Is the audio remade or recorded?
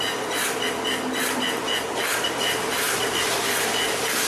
recorded